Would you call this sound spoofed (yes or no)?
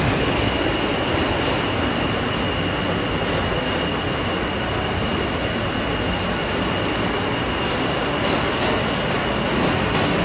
no